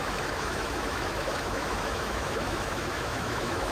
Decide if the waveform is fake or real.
fake